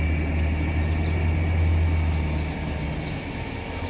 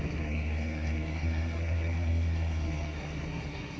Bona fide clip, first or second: first